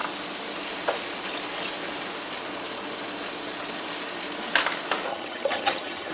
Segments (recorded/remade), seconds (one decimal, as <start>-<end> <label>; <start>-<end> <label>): 0.0-5.1 recorded; 5.1-6.1 remade